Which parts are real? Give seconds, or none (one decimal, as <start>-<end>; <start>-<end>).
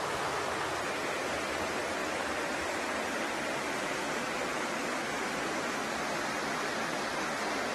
0.0-7.7